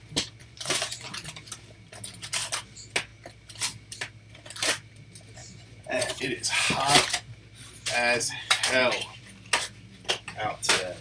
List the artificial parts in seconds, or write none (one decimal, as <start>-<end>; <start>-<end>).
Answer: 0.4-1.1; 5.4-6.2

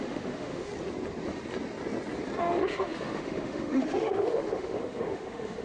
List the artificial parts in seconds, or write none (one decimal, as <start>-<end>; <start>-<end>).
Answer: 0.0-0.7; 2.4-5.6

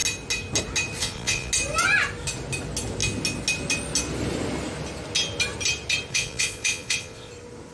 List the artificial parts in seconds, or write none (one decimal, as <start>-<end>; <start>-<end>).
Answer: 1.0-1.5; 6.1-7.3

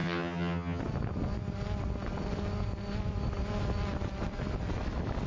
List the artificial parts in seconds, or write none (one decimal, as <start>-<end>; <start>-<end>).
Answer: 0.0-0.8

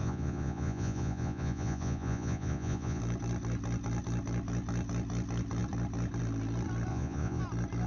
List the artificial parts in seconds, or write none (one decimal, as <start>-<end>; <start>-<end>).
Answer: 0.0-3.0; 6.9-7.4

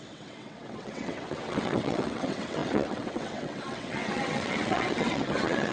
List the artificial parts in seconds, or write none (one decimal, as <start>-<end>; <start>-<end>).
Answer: 0.0-5.7

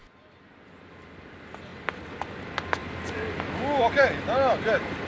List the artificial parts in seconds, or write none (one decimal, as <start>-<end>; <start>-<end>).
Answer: none